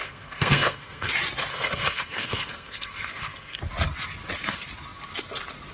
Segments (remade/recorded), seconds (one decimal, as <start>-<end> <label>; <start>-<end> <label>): 0.0-1.1 remade; 1.1-1.5 recorded; 1.5-3.6 remade; 3.6-5.7 recorded